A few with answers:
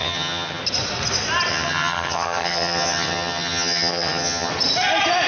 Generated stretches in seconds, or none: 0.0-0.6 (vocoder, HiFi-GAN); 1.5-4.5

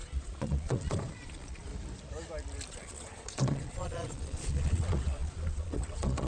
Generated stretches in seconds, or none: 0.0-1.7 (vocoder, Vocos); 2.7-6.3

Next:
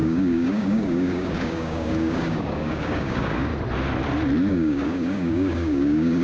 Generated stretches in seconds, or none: 0.0-3.5 (codec, DAC); 4.5-6.2

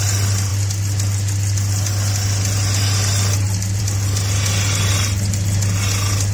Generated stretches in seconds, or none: none